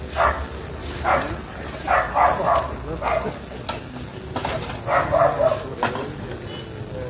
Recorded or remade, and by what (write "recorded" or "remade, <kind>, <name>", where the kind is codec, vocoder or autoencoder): recorded